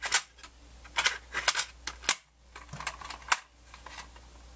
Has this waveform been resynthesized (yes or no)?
no